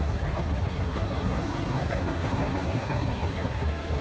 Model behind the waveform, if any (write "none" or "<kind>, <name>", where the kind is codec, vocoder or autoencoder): codec, SNAC